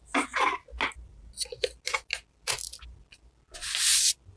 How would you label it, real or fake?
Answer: real